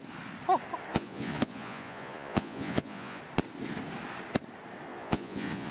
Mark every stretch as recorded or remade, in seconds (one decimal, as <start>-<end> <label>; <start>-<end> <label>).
0.0-0.9 recorded; 0.9-3.2 remade; 3.2-4.9 recorded; 4.9-5.7 remade